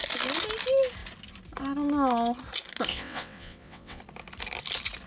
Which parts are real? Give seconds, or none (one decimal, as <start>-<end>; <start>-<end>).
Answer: 0.0-2.9; 4.0-5.1